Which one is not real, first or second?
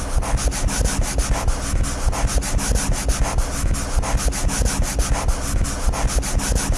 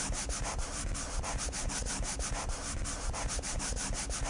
second